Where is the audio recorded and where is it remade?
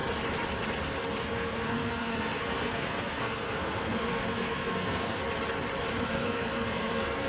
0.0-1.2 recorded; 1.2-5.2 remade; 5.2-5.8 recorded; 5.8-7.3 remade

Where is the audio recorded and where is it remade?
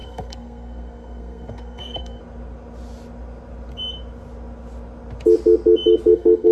0.0-2.2 remade; 2.2-6.1 recorded; 6.1-6.5 remade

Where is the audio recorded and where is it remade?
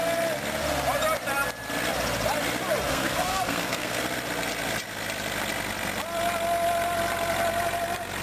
0.0-2.9 recorded; 2.9-4.0 remade; 4.0-8.2 recorded